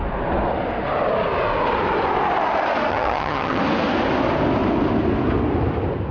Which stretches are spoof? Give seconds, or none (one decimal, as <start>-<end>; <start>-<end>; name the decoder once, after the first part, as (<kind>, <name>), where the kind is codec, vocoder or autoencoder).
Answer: 2.9-3.6 (vocoder, HiFi-GAN)